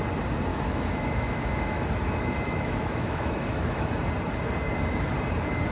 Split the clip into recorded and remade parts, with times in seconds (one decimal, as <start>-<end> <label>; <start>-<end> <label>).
0.0-0.5 recorded; 0.5-3.9 remade; 3.9-5.7 recorded